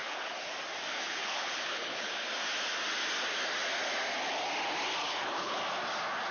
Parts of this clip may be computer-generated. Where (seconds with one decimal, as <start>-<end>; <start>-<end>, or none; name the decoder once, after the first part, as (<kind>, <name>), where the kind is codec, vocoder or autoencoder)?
0.0-0.5 (codec, HILCodec); 0.9-2.1; 5.0-5.6